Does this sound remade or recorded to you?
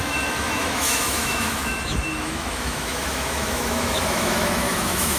remade